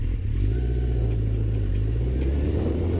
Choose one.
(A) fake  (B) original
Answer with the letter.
A